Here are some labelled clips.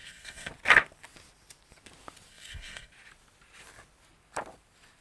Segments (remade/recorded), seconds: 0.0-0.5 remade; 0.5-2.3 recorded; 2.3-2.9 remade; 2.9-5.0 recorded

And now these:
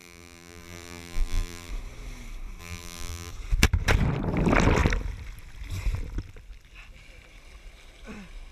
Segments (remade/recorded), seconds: 0.0-1.7 remade; 1.7-2.6 recorded; 2.6-3.3 remade; 3.3-8.5 recorded

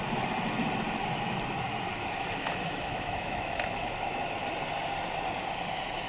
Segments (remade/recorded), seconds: 0.0-1.9 recorded; 1.9-4.2 remade; 4.2-6.1 recorded

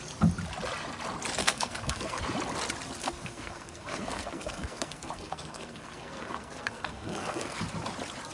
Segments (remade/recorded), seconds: 0.0-1.4 recorded; 1.4-2.2 remade; 2.2-3.0 recorded; 3.0-7.7 remade; 7.7-8.3 recorded

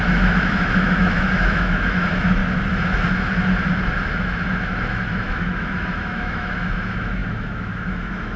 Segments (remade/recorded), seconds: 0.0-2.4 remade; 2.4-4.1 recorded; 4.1-8.4 remade

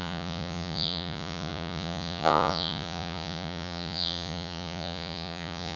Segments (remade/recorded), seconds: 0.0-5.8 remade